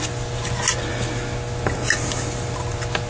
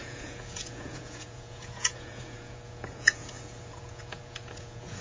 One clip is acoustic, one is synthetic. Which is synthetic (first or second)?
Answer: second